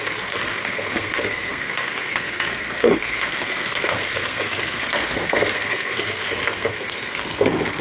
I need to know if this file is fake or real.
fake